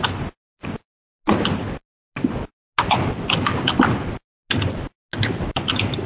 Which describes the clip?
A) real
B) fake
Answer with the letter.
A